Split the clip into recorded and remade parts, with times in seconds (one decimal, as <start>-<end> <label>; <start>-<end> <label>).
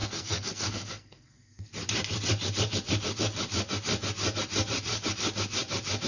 0.0-1.7 remade; 1.7-6.1 recorded